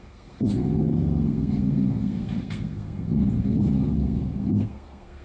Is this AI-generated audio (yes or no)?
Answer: yes